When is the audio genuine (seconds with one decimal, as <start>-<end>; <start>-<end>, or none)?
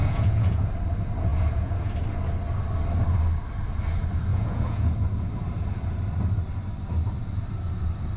0.7-1.3; 1.9-4.3; 5.3-8.2